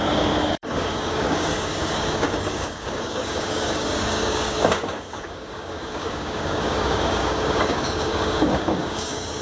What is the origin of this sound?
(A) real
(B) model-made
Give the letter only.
B